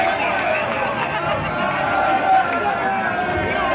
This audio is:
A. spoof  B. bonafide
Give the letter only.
B